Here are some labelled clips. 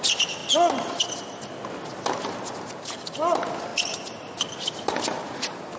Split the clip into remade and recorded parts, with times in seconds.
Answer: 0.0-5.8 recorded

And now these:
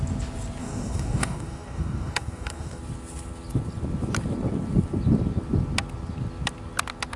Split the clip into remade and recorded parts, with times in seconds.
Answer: 0.0-0.6 recorded; 0.6-2.8 remade; 2.8-7.2 recorded

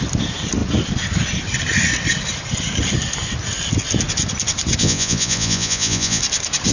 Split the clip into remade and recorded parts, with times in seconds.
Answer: 0.0-4.8 recorded; 4.8-6.2 remade; 6.2-6.7 recorded

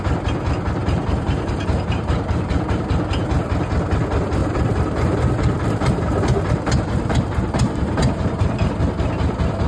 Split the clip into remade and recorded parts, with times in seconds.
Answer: 0.0-0.8 recorded; 0.8-2.6 remade; 2.6-4.4 recorded; 4.4-8.8 remade; 8.8-9.7 recorded